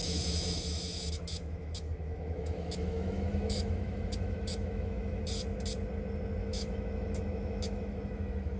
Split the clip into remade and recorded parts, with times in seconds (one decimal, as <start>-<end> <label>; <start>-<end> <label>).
0.0-5.2 remade; 5.2-6.4 recorded; 6.4-8.6 remade